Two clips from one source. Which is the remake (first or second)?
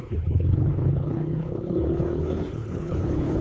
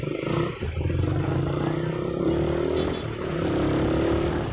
first